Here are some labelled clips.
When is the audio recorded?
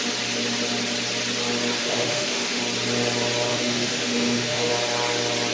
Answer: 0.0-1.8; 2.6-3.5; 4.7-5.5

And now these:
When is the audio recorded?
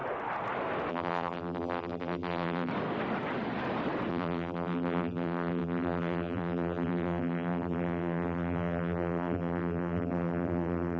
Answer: 0.0-0.9; 2.7-4.1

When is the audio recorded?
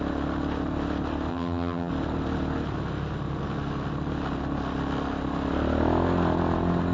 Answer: 0.0-1.3; 1.9-6.9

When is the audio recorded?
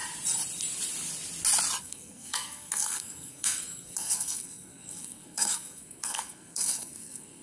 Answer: 0.0-1.8